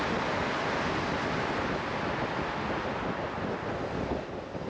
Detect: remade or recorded recorded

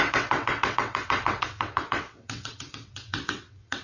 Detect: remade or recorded remade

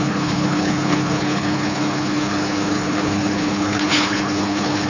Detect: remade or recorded remade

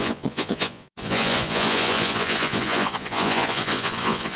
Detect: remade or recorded remade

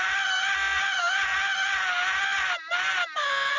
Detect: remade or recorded recorded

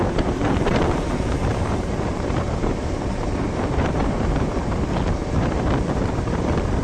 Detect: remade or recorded remade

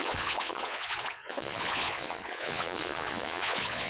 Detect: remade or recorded remade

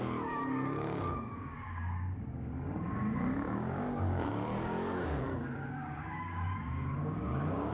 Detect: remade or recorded remade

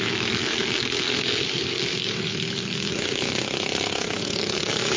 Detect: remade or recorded remade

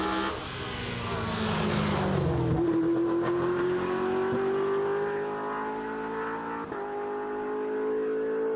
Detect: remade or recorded recorded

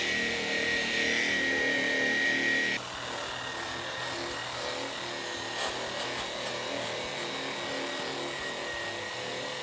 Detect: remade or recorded recorded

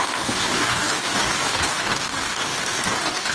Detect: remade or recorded remade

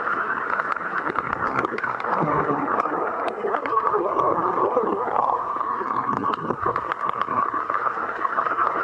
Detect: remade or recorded remade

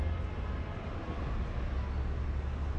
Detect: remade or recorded recorded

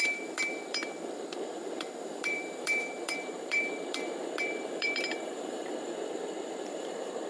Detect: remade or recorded remade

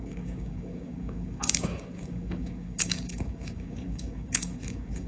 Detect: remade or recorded remade